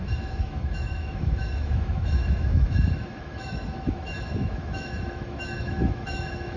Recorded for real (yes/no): no